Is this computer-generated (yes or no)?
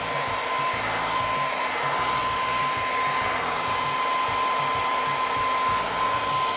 no